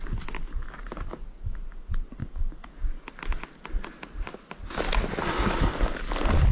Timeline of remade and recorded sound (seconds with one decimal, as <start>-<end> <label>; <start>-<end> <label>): 0.0-2.2 recorded; 2.2-2.7 remade; 2.7-6.5 recorded